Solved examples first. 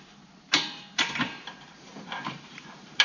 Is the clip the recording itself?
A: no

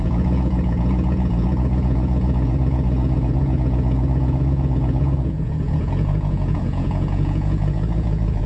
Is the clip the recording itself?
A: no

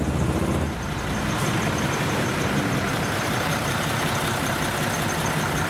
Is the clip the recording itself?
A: no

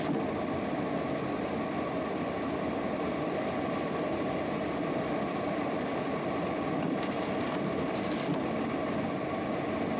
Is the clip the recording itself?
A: yes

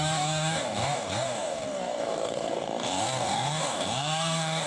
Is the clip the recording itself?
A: no